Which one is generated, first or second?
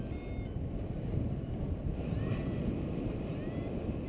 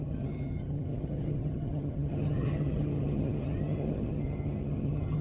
second